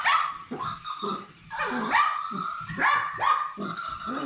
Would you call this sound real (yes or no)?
yes